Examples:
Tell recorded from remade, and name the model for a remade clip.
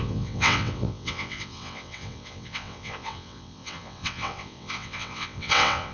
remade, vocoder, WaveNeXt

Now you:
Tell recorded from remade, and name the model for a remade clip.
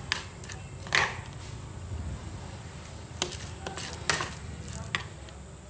recorded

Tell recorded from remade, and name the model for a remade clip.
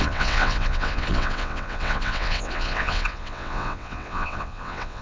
remade, vocoder, WaveNeXt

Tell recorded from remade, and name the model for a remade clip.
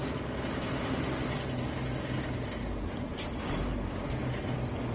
recorded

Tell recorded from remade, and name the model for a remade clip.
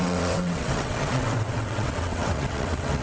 remade, vocoder, WaveNeXt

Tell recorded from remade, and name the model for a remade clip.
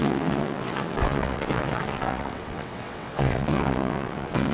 remade, vocoder, WaveNeXt